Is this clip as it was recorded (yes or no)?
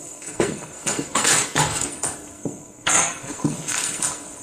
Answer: no